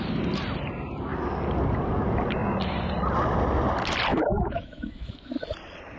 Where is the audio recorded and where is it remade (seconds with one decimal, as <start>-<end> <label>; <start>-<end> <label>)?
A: 0.0-4.1 recorded; 4.1-5.3 remade; 5.3-6.0 recorded